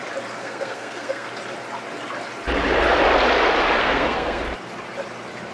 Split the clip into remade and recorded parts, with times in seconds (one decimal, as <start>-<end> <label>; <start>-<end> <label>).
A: 0.0-0.4 recorded; 0.4-1.3 remade; 1.3-3.8 recorded; 3.8-4.4 remade; 4.4-5.5 recorded